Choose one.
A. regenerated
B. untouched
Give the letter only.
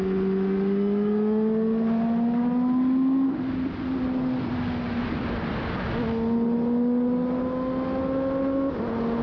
B